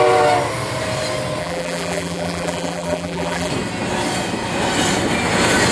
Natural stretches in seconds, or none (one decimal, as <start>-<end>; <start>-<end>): 0.0-1.4; 3.5-5.7